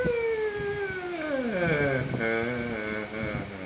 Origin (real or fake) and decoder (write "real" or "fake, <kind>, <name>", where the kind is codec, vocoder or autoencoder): real